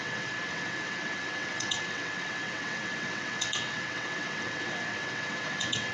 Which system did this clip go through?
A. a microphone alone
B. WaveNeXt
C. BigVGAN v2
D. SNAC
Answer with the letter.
B